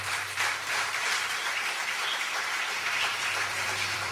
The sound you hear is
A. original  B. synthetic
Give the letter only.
B